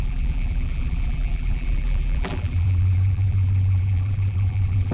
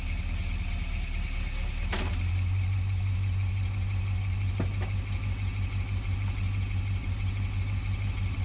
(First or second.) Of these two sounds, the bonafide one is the second